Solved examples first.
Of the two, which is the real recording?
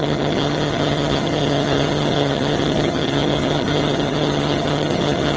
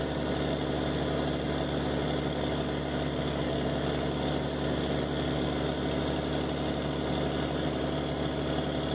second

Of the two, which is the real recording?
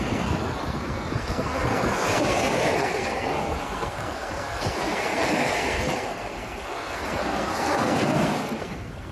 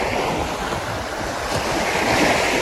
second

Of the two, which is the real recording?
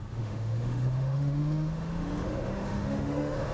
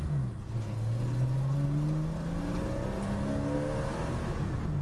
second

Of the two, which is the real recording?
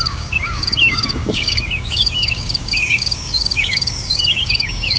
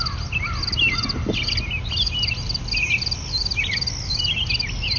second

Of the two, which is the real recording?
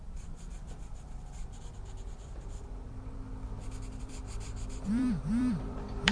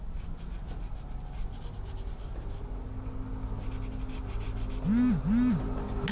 second